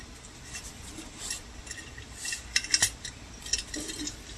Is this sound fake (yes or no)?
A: no